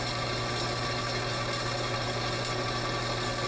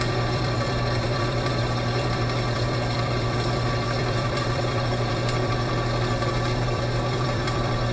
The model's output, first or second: second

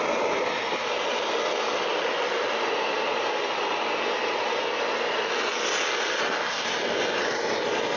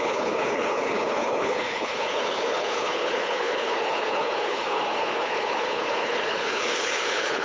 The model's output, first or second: second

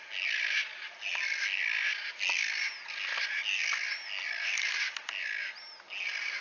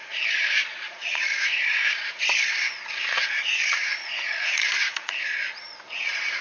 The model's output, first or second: second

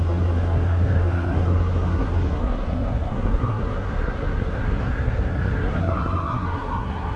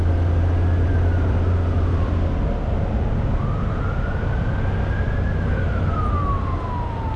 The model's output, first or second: first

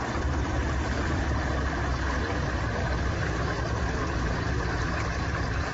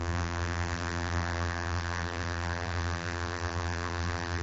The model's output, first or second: second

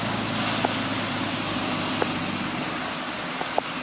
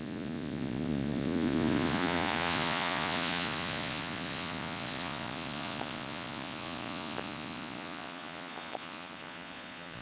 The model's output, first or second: second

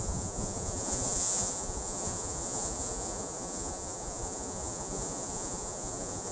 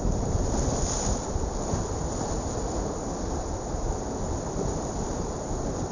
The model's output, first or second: first